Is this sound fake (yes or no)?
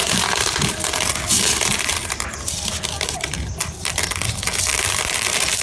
no